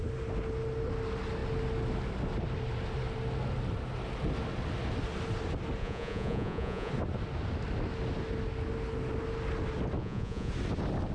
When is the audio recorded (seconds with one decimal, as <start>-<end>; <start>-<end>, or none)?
0.0-5.8; 6.9-10.0; 10.5-11.1